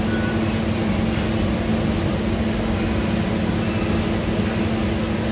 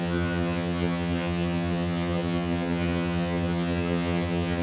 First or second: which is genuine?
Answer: first